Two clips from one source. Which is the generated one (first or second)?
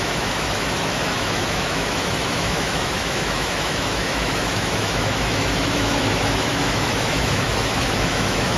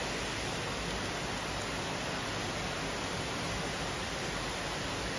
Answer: first